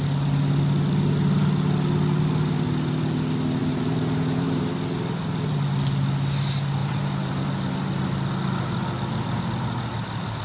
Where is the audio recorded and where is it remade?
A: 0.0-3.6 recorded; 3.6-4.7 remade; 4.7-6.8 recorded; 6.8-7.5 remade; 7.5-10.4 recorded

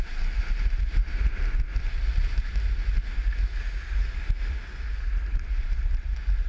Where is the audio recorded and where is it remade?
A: 0.0-1.0 remade; 1.0-1.8 recorded; 1.8-2.5 remade; 2.5-5.3 recorded; 5.3-6.5 remade